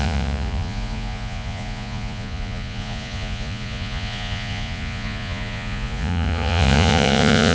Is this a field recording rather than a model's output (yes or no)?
no